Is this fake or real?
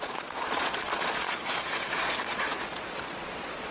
fake